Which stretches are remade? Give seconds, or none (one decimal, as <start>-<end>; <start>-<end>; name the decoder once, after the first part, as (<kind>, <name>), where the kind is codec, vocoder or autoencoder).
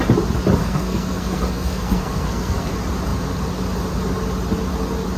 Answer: 0.6-2.7 (codec, SNAC)